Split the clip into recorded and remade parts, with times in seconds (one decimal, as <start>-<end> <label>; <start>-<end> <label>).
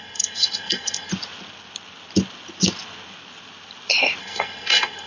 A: 0.0-1.1 remade; 1.1-4.2 recorded; 4.2-5.1 remade